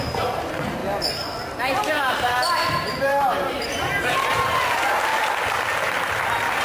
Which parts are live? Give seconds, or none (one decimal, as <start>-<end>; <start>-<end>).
0.8-1.8; 5.1-6.6

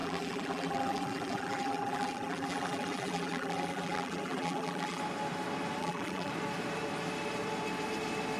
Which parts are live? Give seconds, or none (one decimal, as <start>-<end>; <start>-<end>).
5.0-5.8; 6.3-8.4

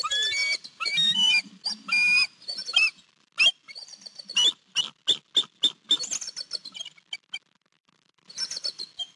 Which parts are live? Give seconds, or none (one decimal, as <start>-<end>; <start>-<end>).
0.0-0.4; 3.0-9.2

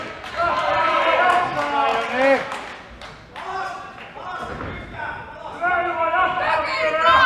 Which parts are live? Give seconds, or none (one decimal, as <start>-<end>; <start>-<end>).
0.0-0.4; 1.4-7.3